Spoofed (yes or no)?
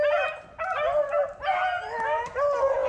no